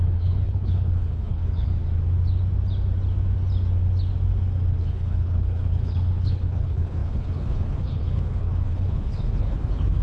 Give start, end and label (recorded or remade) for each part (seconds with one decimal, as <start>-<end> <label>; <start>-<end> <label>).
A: 0.0-1.7 remade; 1.7-4.7 recorded; 4.7-10.0 remade